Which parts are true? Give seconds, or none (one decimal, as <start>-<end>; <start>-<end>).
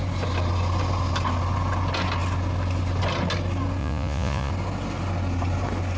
0.0-3.8; 4.5-6.0